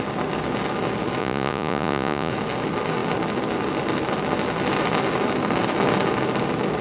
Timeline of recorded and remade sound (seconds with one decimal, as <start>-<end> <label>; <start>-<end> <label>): 0.0-1.2 recorded; 1.2-2.3 remade; 2.3-6.8 recorded